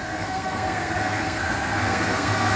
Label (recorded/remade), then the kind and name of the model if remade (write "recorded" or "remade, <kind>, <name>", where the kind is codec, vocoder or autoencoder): remade, codec, SNAC